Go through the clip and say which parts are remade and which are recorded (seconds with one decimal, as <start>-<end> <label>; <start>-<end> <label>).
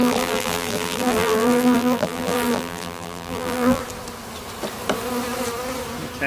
0.0-3.8 remade; 3.8-6.3 recorded